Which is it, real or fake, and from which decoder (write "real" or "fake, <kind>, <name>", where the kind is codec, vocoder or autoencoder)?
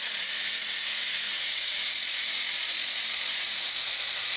fake, vocoder, Vocos